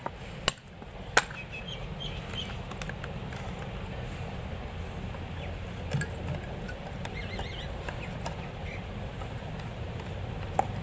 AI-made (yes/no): no